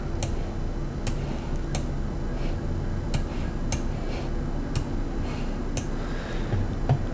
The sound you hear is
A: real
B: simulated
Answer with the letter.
A